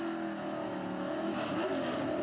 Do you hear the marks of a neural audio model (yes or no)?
no